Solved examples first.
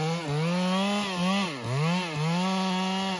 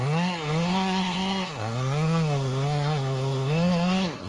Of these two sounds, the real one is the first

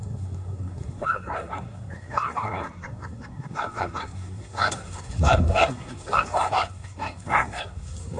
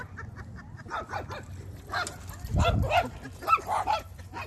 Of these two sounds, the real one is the second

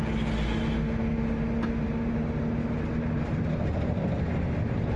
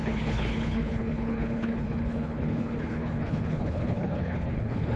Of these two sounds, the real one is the first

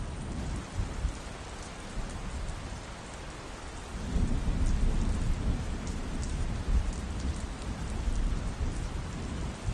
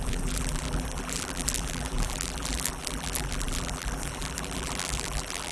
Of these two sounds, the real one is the first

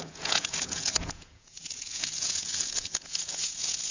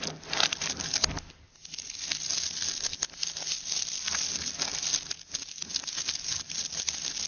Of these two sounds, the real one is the second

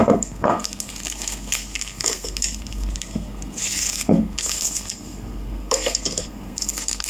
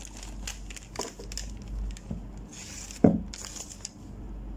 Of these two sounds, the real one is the second